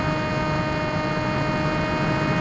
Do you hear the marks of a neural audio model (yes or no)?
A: no